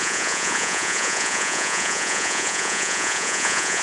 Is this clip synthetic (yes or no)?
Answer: yes